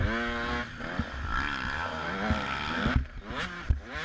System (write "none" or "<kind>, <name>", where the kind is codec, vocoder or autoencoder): none